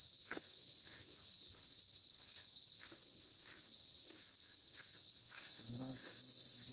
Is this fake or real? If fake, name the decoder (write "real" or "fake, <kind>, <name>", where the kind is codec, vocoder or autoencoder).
fake, codec, SNAC